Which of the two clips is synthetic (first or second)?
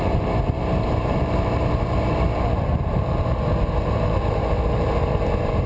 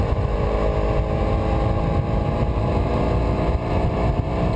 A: first